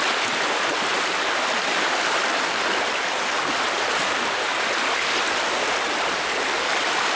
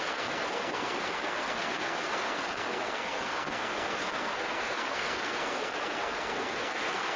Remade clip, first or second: second